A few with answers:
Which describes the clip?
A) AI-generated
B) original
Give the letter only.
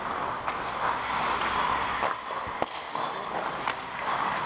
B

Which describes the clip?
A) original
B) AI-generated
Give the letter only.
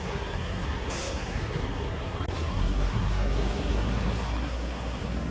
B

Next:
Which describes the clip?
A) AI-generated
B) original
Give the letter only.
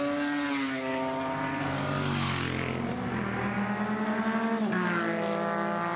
B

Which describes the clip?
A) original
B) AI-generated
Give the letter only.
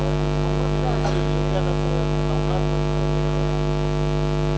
A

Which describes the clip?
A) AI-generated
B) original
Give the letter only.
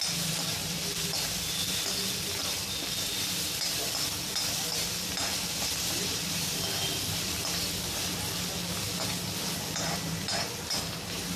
B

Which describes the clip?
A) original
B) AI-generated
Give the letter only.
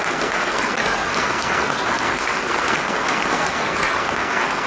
B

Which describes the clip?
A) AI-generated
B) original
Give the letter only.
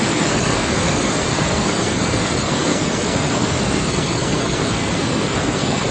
A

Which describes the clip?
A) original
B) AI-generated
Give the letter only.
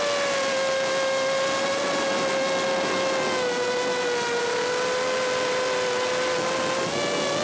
A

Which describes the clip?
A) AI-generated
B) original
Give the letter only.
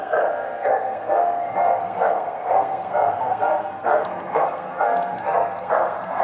A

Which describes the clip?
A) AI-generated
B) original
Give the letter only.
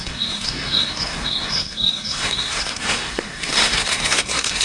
A